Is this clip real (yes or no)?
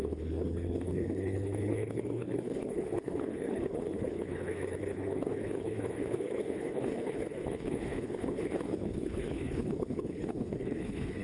no